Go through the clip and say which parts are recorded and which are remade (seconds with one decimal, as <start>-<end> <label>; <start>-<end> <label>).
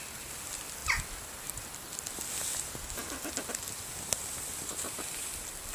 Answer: 0.0-0.8 recorded; 0.8-2.1 remade; 2.1-4.2 recorded; 4.2-5.3 remade; 5.3-5.7 recorded